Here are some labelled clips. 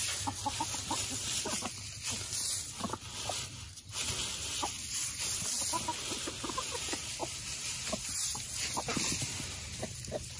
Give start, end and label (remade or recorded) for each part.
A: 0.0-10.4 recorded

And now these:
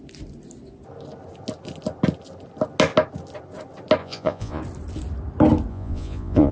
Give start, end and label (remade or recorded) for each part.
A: 0.0-4.0 recorded; 4.0-4.6 remade; 4.6-5.7 recorded; 5.7-6.5 remade

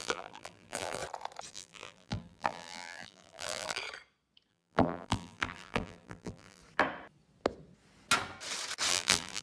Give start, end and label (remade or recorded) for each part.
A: 0.0-1.0 remade; 1.0-1.5 recorded; 1.5-3.8 remade; 3.8-4.5 recorded; 4.5-6.6 remade; 6.6-8.9 recorded; 8.9-9.4 remade